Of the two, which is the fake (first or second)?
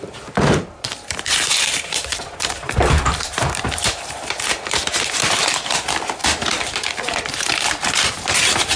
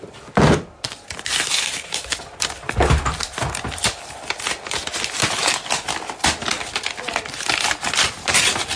first